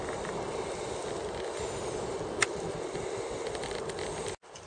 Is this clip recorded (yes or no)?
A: yes